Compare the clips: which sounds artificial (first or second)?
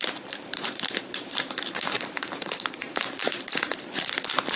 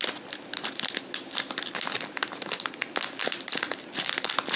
first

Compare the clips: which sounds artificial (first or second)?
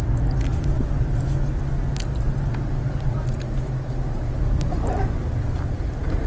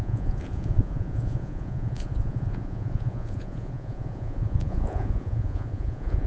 second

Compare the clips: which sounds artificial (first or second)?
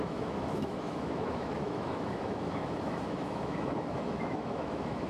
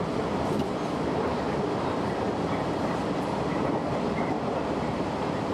first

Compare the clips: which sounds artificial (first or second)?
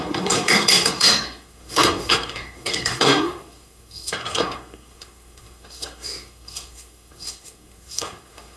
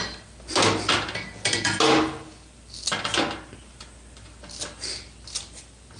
first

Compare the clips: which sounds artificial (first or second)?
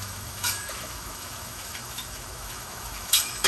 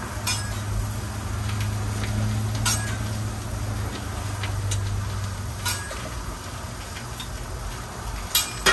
first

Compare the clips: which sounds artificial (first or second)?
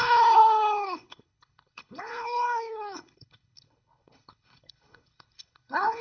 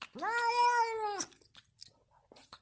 first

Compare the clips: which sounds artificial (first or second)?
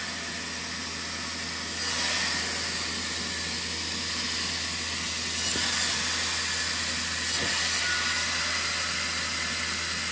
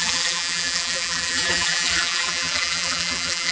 second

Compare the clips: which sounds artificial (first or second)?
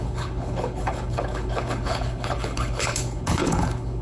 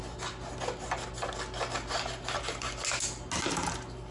first